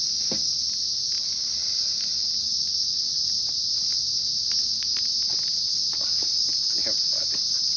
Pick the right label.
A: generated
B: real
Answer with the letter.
B